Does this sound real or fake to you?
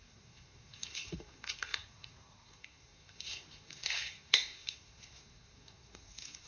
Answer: fake